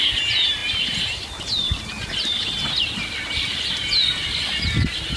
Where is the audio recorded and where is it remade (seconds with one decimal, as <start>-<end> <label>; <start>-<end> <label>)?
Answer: 0.0-5.2 recorded